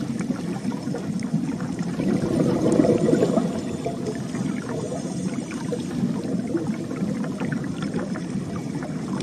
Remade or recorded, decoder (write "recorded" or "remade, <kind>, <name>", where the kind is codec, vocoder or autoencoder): recorded